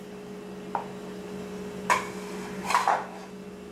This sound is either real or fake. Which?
real